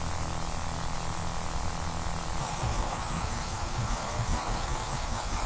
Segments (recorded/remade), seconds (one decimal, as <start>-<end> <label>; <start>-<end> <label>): 0.0-2.4 recorded; 2.4-5.5 remade